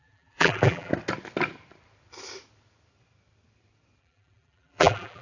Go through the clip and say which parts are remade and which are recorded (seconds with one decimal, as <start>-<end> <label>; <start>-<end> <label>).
0.0-0.9 remade; 0.9-4.0 recorded; 4.0-5.2 remade